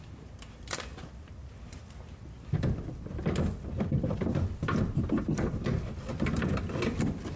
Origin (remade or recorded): remade